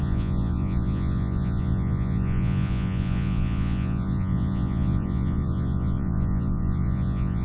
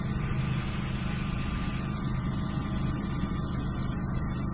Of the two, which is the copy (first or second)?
first